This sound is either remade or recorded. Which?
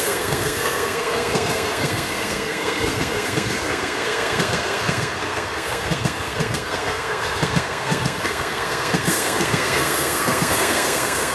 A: remade